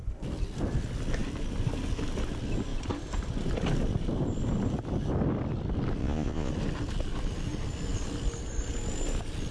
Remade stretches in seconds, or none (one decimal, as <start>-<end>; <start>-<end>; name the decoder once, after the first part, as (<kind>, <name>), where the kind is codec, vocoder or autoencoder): 6.0-6.5 (vocoder, Vocos)